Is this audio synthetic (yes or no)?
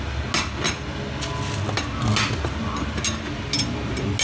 no